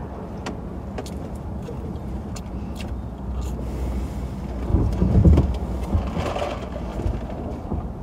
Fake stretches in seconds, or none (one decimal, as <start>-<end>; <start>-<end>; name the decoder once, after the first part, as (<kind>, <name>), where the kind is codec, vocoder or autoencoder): 1.0-2.8 (vocoder, BigVGAN v2); 4.7-6.2